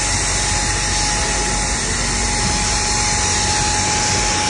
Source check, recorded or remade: recorded